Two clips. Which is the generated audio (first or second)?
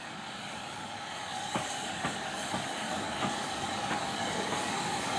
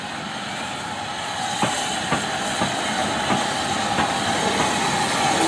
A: first